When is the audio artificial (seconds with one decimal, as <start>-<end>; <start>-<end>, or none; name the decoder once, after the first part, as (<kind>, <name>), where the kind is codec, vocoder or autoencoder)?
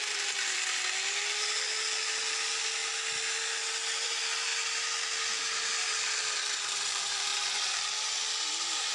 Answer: 0.0-2.8 (vocoder, BigVGAN v2); 3.4-4.5; 5.9-8.9